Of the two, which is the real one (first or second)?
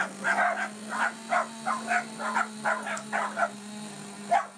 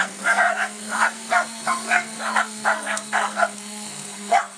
first